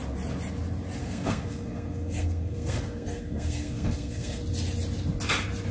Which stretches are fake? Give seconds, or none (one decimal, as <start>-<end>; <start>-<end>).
1.0-4.4